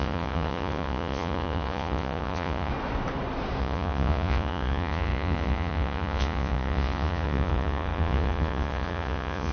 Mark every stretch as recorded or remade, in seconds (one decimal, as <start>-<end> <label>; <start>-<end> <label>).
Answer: 0.0-2.7 remade; 2.7-3.6 recorded; 3.6-9.5 remade